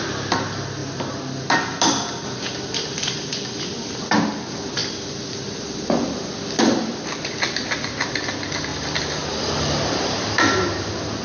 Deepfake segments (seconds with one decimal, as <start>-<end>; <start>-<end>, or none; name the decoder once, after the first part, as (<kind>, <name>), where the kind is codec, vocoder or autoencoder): 0.8-3.6 (vocoder, BigVGAN v2); 4.8-5.5; 8.7-9.5